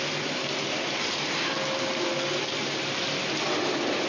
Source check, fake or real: real